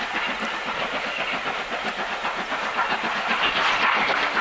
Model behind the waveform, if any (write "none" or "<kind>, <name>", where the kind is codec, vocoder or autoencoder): none